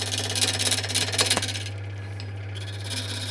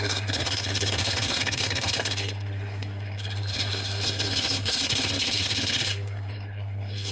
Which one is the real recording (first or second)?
first